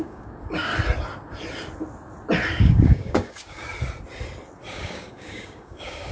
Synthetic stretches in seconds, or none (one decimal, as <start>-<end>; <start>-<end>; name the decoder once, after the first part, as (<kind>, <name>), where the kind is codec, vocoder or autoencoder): 0.0-0.7 (codec, DAC); 2.6-3.7; 4.7-6.1